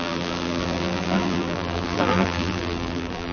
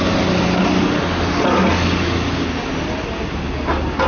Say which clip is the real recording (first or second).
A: second